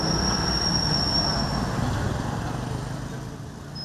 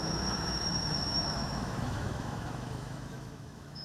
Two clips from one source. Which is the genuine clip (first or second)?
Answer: first